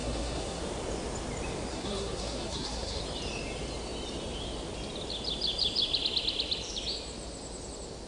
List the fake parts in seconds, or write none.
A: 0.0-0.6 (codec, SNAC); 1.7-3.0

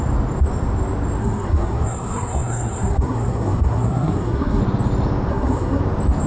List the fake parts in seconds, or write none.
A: 1.2-4.6 (codec, SNAC); 5.3-5.8

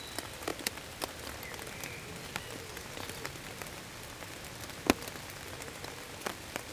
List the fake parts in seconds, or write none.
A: none

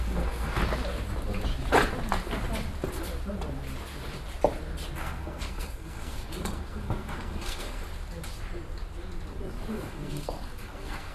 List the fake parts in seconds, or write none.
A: 0.0-0.6 (codec, SNAC); 5.0-7.8; 9.7-11.1

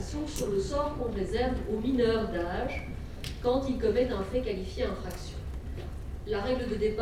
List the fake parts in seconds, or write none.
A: 0.0-0.7 (codec, SNAC)

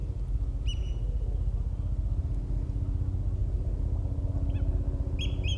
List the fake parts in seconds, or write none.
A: none

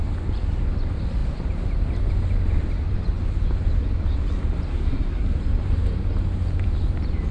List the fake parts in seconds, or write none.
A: 4.7-5.4 (codec, SNAC)

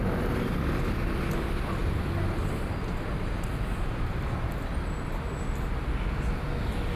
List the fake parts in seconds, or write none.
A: none